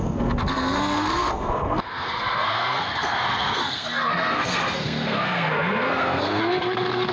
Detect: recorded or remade remade